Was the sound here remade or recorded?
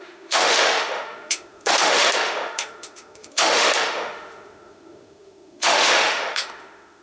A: remade